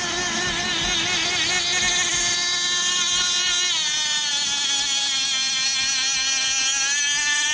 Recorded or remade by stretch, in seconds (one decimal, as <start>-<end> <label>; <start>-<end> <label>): 0.0-7.5 recorded